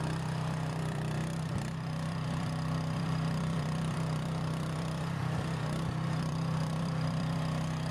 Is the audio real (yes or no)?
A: no